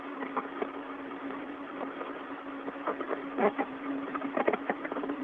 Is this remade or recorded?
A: remade